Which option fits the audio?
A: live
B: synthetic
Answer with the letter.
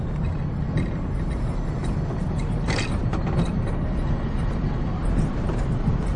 A